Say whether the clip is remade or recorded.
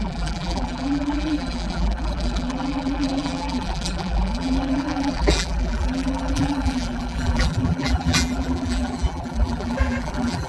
remade